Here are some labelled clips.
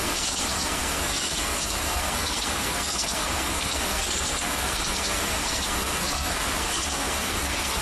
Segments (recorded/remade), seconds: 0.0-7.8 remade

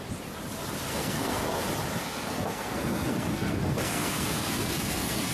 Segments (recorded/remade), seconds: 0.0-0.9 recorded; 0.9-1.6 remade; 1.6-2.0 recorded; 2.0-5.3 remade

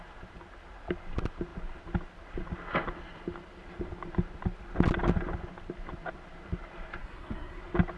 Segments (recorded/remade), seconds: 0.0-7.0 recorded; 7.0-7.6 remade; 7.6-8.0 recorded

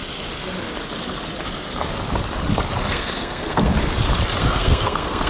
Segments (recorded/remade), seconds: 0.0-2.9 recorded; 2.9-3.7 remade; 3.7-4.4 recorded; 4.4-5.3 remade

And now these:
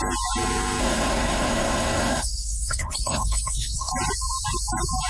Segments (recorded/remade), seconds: 0.0-0.8 recorded; 0.8-3.9 remade; 3.9-5.1 recorded